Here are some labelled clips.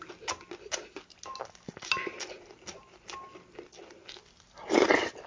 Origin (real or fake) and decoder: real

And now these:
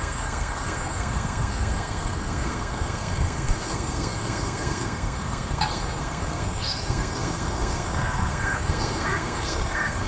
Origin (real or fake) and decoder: fake, codec, SNAC